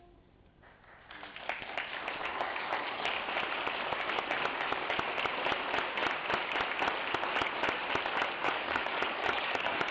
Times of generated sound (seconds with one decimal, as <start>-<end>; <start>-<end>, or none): 2.2-3.1; 8.4-9.9